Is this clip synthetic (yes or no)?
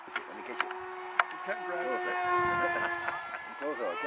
no